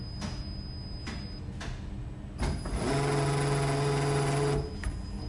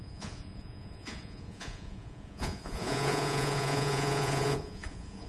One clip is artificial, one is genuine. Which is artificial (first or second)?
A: second